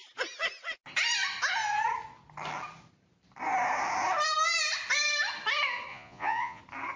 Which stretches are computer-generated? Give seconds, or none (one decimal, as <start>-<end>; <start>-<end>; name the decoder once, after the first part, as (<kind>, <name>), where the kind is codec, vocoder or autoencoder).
5.9-6.6 (vocoder, Vocos)